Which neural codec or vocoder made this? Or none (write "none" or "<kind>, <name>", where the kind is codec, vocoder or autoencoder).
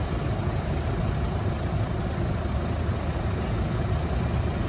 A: none